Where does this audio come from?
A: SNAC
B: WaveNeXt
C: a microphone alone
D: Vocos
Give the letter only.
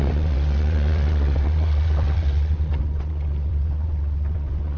B